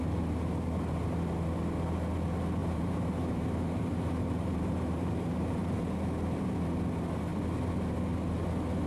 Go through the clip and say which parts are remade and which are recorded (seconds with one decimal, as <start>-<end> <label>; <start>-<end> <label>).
0.0-2.6 recorded; 2.6-5.8 remade; 5.8-7.3 recorded; 7.3-8.0 remade; 8.0-8.9 recorded